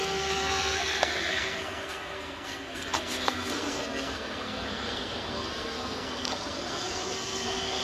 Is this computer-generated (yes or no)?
yes